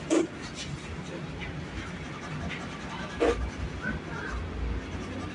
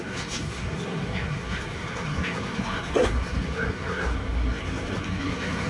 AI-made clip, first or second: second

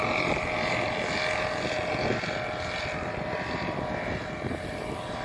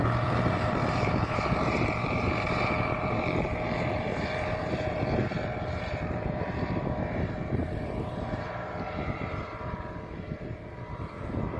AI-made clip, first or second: second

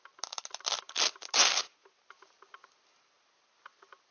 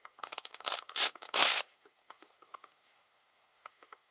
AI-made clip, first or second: second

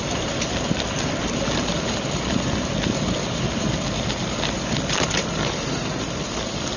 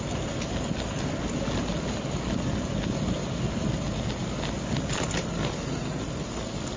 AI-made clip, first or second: first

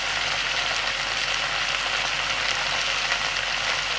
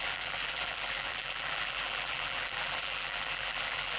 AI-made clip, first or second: second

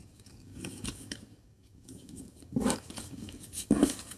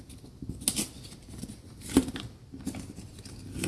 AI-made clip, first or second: first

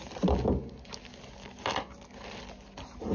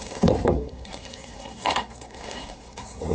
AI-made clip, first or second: second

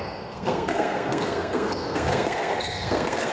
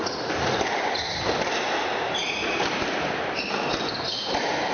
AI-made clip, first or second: first